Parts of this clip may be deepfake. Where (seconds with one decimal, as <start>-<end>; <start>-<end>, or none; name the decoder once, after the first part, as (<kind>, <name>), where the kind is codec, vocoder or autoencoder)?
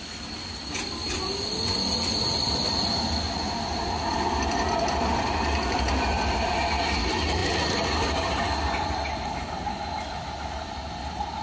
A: none